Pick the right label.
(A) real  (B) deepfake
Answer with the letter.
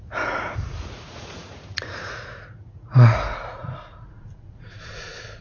B